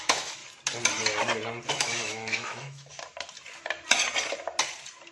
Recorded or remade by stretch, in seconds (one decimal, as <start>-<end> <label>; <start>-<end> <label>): 0.0-0.4 remade; 0.4-1.7 recorded; 1.7-2.9 remade; 2.9-5.1 recorded

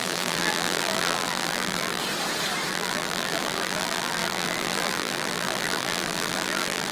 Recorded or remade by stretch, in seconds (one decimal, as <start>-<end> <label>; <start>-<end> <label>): 0.0-2.0 remade; 2.0-2.7 recorded; 2.7-6.9 remade

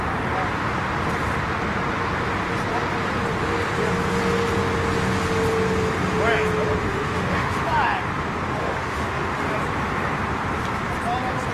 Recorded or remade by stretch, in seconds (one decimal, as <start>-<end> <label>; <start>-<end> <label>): 0.0-6.8 recorded; 6.8-7.6 remade; 7.6-8.6 recorded; 8.6-9.5 remade; 9.5-11.5 recorded

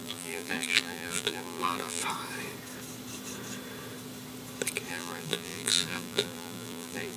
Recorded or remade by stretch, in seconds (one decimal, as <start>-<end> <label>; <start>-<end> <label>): 0.0-2.0 remade; 2.0-4.9 recorded; 4.9-7.2 remade